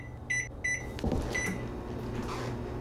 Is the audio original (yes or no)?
yes